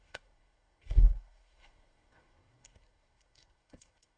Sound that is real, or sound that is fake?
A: fake